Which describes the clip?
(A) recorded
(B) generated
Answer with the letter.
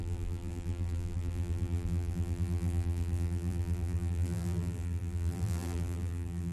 B